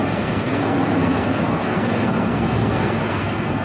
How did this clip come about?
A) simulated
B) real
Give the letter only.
A